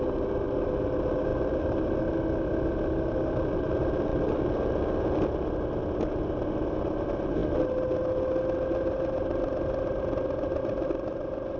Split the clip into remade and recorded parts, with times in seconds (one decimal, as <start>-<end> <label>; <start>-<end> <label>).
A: 0.0-11.6 recorded

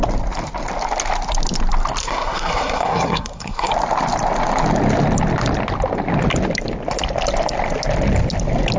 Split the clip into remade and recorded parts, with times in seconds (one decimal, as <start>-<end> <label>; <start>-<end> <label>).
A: 0.0-2.0 recorded; 2.0-3.7 remade; 3.7-8.8 recorded

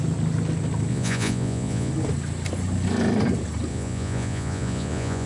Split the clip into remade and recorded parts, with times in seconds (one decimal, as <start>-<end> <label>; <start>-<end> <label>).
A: 0.0-0.9 recorded; 0.9-1.9 remade; 1.9-3.7 recorded; 3.7-5.3 remade